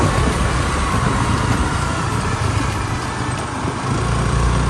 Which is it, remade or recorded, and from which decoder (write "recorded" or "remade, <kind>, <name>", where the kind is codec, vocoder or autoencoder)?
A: recorded